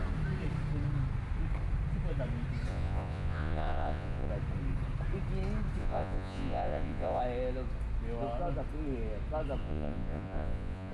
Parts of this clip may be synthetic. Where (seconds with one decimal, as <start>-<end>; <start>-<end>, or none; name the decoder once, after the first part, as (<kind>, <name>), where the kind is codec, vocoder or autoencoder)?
2.7-4.3 (vocoder, Vocos); 5.8-7.2; 9.6-10.9